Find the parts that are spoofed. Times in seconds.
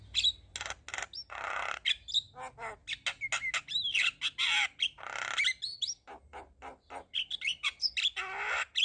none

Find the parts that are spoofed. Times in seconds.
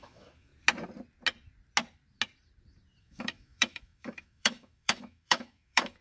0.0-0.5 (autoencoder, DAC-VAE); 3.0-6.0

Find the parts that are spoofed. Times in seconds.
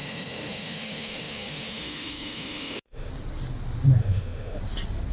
0.0-3.1 (autoencoder, DAC-VAE); 4.0-4.6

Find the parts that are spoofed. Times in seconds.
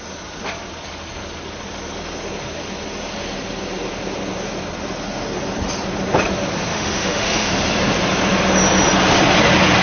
6.7-7.5 (autoencoder, DAC-VAE)